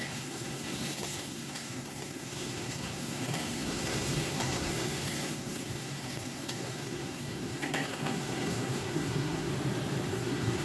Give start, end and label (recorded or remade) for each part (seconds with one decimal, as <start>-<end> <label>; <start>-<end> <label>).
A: 0.0-9.5 remade; 9.5-10.1 recorded; 10.1-10.6 remade